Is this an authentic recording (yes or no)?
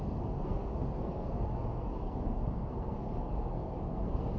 no